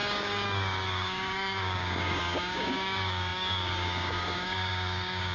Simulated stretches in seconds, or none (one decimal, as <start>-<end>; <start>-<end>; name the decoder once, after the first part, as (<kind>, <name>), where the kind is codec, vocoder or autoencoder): 0.0-5.3 (codec, DAC)